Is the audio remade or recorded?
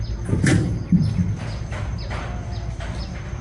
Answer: recorded